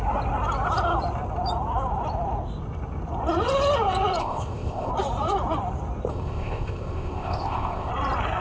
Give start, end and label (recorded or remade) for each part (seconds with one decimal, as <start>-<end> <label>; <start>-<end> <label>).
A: 0.0-4.2 recorded; 4.2-4.9 remade; 4.9-6.1 recorded; 6.1-7.9 remade; 7.9-8.4 recorded